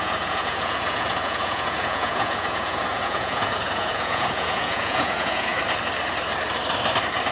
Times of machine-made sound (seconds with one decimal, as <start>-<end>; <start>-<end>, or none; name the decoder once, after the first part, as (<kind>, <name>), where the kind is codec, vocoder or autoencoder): 0.0-5.5 (vocoder, Vocos)